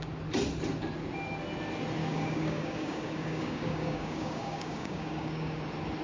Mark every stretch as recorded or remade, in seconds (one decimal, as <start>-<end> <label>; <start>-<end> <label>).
0.0-2.0 recorded; 2.0-5.6 remade; 5.6-6.0 recorded